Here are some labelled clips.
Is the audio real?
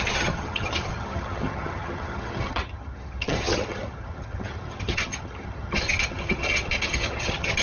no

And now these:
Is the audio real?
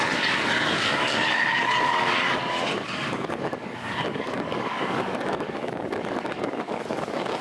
no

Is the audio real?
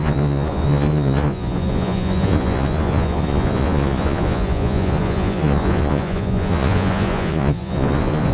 no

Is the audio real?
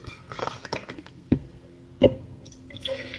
no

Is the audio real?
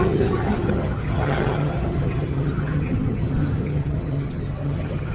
no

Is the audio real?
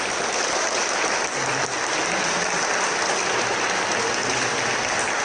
yes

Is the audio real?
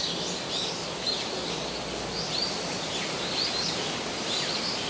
yes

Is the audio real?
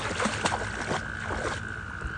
yes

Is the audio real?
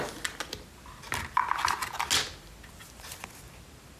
yes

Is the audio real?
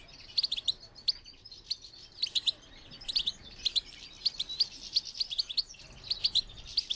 yes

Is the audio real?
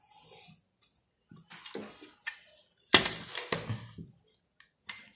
yes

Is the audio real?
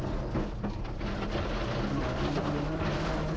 yes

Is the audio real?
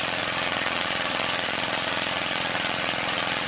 no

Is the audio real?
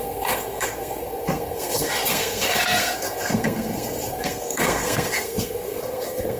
no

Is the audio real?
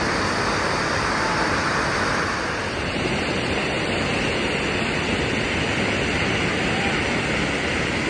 yes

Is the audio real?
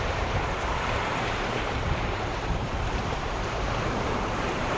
no